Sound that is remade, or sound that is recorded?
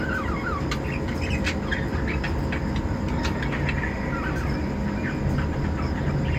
recorded